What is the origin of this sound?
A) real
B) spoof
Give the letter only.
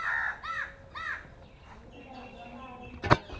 A